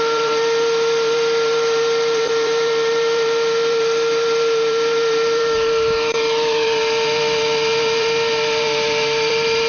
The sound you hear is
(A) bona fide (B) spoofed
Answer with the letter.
B